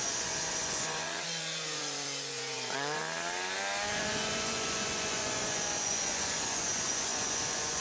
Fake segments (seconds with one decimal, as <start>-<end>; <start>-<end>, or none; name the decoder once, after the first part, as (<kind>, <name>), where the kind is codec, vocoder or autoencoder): 0.0-3.0 (vocoder, Vocos); 3.9-7.8